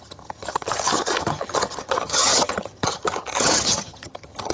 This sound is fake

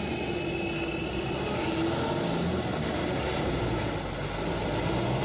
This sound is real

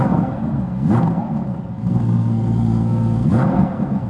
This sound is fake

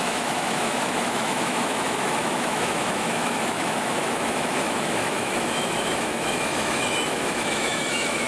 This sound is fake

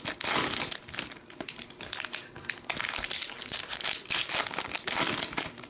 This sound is real